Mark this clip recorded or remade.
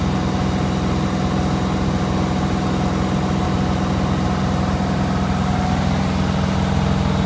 recorded